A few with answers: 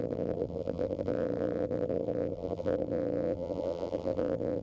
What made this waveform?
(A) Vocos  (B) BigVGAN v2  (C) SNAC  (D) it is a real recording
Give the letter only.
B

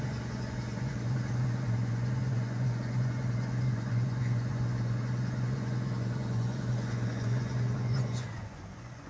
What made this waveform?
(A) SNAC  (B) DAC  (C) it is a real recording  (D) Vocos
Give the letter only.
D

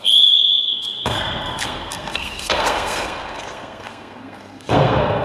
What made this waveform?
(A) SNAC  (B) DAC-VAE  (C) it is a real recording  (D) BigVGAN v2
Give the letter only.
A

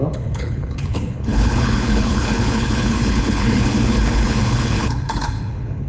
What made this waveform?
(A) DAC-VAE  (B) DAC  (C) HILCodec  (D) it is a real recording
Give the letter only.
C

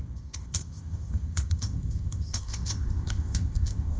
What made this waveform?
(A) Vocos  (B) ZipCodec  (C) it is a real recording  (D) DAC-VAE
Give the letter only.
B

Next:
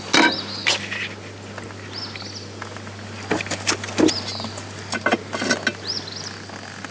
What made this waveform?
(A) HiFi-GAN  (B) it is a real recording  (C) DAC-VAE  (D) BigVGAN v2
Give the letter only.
B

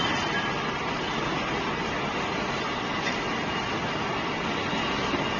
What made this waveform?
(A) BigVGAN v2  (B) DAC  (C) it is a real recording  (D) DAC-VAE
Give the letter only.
A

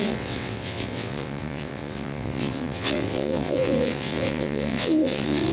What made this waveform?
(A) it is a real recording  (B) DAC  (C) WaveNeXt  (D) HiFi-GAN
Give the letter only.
C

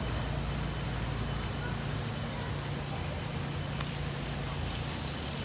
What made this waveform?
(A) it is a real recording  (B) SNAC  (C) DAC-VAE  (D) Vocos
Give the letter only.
A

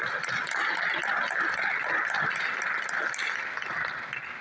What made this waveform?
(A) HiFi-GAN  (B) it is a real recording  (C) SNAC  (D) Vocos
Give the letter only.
B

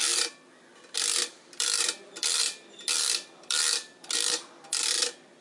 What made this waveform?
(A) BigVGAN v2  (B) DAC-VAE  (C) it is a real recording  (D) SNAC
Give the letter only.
A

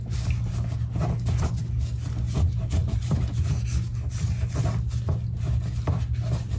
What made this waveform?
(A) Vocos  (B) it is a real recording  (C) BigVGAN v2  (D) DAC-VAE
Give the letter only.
B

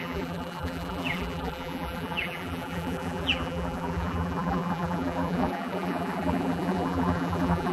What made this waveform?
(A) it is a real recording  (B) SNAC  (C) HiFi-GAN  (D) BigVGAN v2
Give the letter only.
D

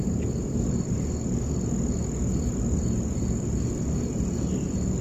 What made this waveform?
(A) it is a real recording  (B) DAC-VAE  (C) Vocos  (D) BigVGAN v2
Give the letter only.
A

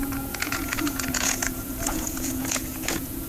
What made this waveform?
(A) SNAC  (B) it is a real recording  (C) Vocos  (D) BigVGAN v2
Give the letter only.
C